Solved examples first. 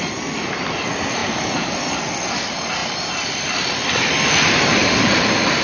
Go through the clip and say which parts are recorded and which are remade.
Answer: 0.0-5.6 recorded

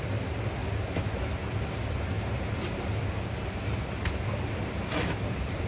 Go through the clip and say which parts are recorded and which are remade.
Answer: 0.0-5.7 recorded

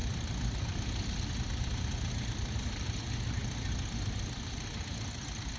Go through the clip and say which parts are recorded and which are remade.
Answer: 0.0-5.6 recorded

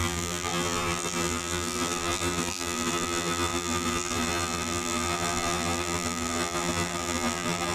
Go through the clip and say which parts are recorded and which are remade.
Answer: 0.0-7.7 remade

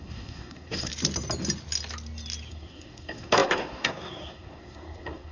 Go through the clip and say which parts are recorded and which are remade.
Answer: 0.0-0.9 remade; 0.9-2.5 recorded; 2.5-5.3 remade

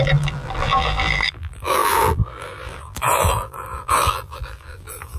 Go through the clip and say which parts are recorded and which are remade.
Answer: 0.0-5.2 remade

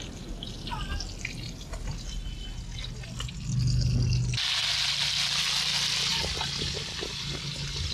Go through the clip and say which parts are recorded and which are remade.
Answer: 0.0-7.9 recorded